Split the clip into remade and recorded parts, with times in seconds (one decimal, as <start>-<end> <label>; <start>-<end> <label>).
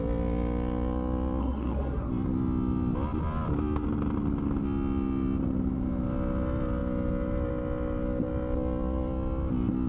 0.0-1.4 recorded; 1.4-2.1 remade; 2.1-9.9 recorded